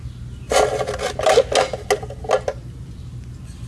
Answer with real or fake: real